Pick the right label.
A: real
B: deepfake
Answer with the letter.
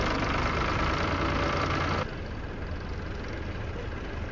A